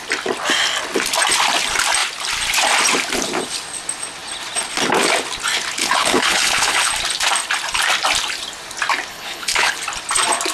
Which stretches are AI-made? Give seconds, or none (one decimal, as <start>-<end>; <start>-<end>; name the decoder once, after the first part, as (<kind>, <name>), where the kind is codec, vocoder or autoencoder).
5.8-6.9 (codec, HILCodec); 9.1-9.8